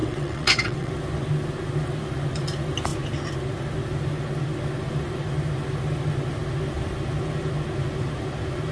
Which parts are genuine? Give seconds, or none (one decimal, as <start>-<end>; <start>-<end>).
0.9-8.7